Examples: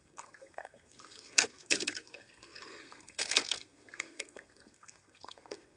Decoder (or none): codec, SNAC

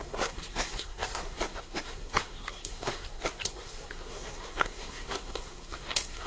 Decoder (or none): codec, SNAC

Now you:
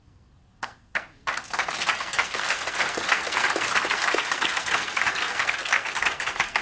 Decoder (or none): codec, SNAC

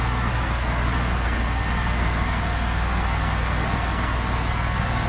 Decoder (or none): codec, SNAC